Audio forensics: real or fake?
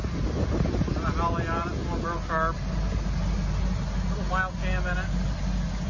real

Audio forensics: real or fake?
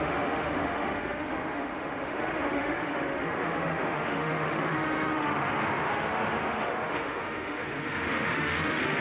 fake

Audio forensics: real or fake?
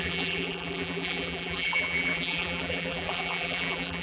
fake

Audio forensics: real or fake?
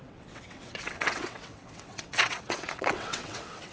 fake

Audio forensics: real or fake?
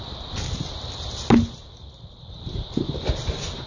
real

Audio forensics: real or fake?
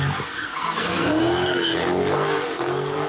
fake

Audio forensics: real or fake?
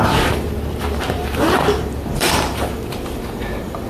fake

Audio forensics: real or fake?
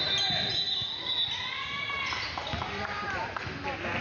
real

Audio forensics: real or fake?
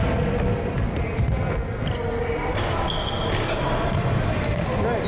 real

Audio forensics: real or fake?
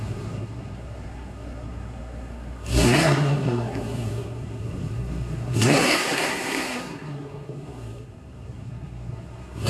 fake